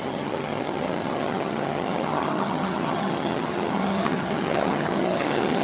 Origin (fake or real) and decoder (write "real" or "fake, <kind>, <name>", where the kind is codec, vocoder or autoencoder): fake, vocoder, HiFi-GAN